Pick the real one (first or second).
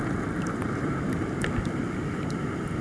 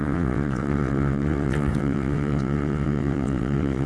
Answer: first